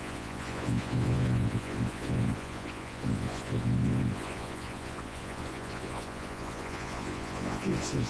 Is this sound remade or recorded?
remade